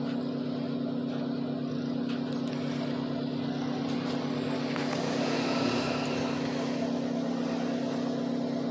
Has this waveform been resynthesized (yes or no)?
no